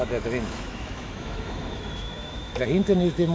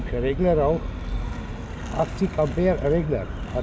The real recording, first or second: second